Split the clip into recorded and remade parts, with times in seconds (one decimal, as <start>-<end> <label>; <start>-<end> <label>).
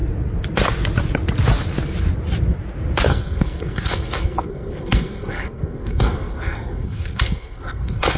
0.0-3.1 recorded; 3.1-8.2 remade